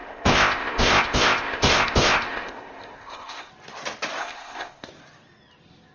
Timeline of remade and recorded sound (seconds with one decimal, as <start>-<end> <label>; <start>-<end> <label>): 0.0-3.5 remade; 3.5-4.2 recorded; 4.2-4.9 remade; 4.9-5.9 recorded